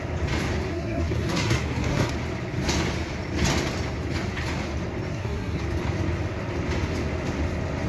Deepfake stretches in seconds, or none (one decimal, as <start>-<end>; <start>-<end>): 0.7-2.1; 5.1-5.6